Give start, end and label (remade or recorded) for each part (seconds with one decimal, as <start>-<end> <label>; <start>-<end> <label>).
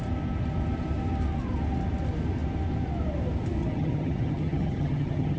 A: 0.0-3.6 recorded; 3.6-5.4 remade